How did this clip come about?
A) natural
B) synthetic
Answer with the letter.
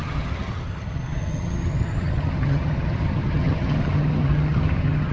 B